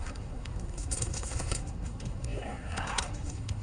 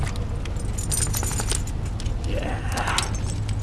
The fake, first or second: first